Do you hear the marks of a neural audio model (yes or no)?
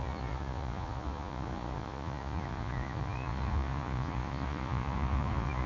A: yes